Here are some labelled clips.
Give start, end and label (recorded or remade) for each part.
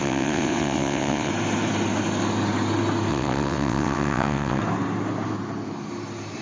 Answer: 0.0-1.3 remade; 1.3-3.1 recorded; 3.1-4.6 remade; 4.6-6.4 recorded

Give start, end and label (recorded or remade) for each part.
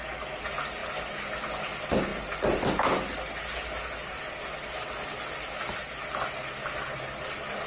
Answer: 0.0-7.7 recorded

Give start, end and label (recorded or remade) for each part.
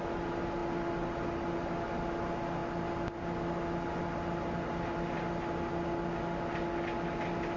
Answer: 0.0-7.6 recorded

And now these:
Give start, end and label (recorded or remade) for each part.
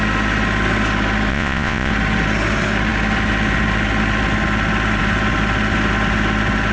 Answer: 0.0-1.3 recorded; 1.3-1.9 remade; 1.9-6.7 recorded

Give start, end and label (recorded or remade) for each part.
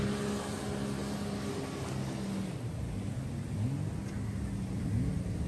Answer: 0.0-5.5 recorded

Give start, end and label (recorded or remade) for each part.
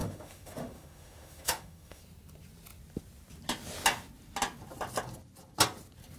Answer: 0.0-2.0 remade; 2.0-6.2 recorded